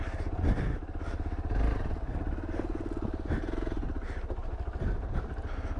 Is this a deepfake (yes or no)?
no